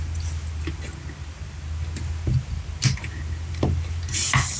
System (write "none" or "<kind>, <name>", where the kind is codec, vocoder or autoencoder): none